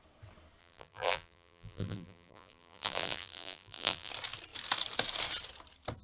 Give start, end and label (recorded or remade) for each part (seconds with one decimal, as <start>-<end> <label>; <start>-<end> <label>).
0.0-0.6 recorded; 0.6-4.1 remade; 4.1-6.0 recorded